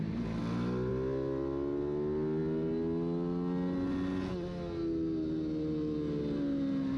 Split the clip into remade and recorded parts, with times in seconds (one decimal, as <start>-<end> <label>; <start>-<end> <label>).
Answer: 0.0-7.0 recorded